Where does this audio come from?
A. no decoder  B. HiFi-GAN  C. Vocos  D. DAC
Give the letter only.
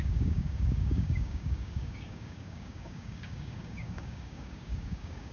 D